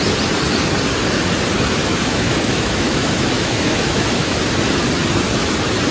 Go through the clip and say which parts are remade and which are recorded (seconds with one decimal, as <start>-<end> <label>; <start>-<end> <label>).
0.0-1.8 recorded; 1.8-4.4 remade; 4.4-5.9 recorded